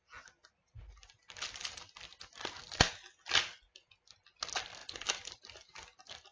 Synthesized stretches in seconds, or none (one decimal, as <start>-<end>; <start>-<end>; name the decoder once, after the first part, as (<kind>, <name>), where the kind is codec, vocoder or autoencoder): 4.8-5.4 (vocoder, BigVGAN v2)